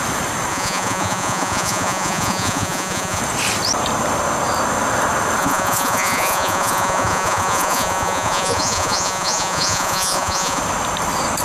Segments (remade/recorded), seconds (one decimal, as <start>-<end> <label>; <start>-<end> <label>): 0.0-0.5 recorded; 0.5-3.2 remade; 3.2-5.4 recorded; 5.4-10.6 remade; 10.6-11.4 recorded